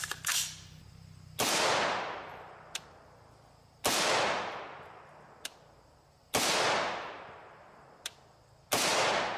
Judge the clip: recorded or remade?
recorded